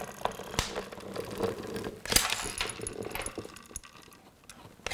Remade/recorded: recorded